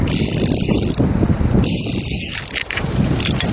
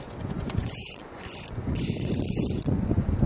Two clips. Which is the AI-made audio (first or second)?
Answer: second